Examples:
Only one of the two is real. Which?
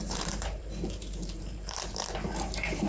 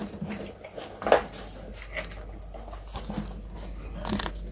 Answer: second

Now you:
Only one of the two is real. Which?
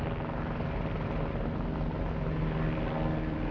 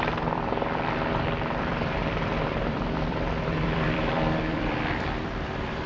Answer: first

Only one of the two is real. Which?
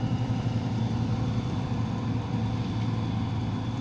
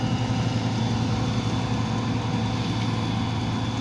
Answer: second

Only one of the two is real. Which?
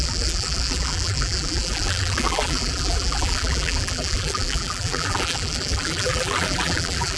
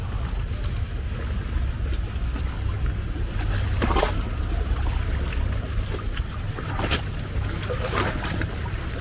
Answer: second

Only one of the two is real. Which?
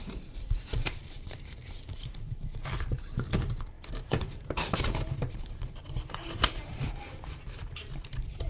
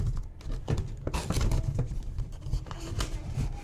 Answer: second